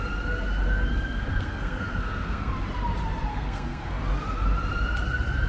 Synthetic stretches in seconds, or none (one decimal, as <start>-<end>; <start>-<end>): 0.9-2.5; 3.3-4.0